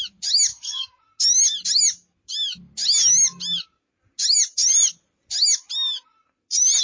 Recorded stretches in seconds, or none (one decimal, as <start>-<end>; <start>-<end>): 0.0-0.5; 1.0-6.8